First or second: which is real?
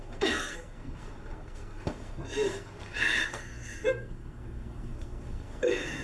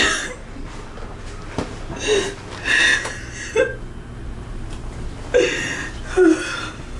second